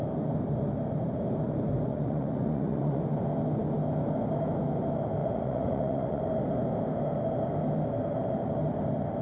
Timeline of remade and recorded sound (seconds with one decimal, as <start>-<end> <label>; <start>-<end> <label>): 0.0-1.9 recorded; 1.9-3.0 remade; 3.0-5.2 recorded; 5.2-6.2 remade; 6.2-9.2 recorded